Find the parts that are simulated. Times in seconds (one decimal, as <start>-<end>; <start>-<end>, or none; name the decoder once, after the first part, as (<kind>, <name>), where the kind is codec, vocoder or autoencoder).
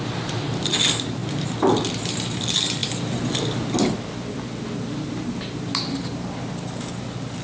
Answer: none